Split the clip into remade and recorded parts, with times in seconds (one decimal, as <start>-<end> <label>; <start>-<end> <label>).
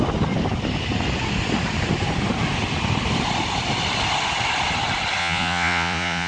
0.0-5.2 recorded; 5.2-6.3 remade